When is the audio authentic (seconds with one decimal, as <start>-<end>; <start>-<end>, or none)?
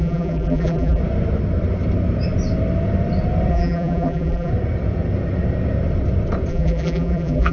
1.0-3.5; 4.5-6.5